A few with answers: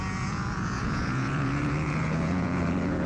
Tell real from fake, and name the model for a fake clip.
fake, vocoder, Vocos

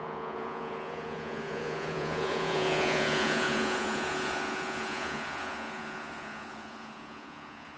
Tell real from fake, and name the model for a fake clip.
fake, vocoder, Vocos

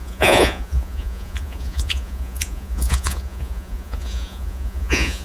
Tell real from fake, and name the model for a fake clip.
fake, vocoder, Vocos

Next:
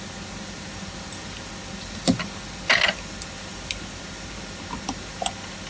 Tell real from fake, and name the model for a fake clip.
real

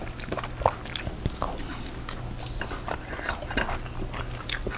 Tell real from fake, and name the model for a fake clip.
real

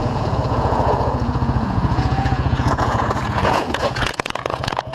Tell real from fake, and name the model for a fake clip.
fake, vocoder, Vocos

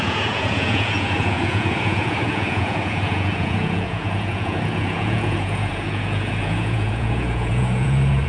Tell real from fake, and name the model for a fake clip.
fake, vocoder, Vocos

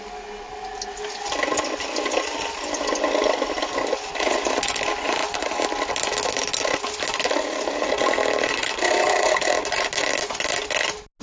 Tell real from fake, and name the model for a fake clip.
real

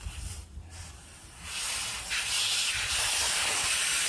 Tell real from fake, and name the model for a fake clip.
real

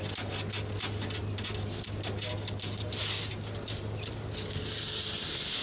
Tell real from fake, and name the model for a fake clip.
real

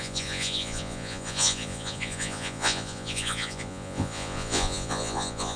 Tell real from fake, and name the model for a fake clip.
fake, vocoder, Vocos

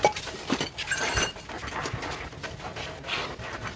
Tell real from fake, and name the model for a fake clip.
real